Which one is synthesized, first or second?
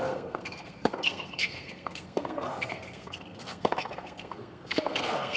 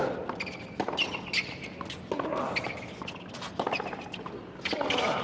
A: first